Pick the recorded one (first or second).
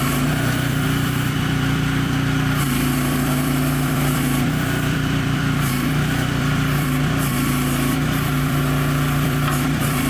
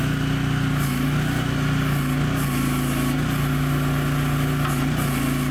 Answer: second